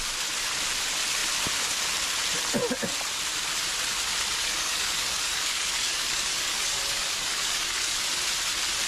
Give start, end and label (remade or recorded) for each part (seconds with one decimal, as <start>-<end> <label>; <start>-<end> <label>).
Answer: 0.0-4.4 recorded; 4.4-8.1 remade; 8.1-8.9 recorded